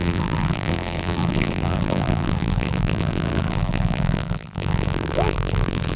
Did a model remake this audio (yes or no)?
yes